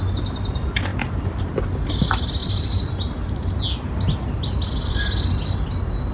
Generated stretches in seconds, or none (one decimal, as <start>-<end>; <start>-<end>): none